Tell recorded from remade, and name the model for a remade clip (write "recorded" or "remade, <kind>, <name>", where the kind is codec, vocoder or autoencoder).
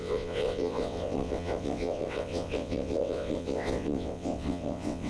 remade, vocoder, WaveNeXt